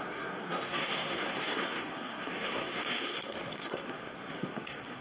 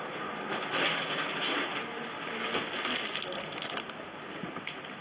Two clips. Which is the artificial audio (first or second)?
first